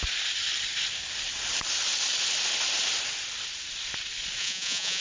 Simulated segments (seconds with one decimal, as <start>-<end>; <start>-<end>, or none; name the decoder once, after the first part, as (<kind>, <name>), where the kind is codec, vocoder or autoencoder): 4.4-5.0 (vocoder, Vocos)